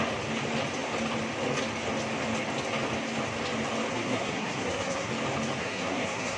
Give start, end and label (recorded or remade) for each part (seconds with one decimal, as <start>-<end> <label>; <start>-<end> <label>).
0.0-3.9 recorded; 3.9-5.1 remade; 5.1-5.6 recorded; 5.6-6.4 remade